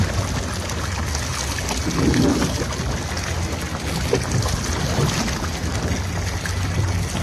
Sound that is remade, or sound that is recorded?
recorded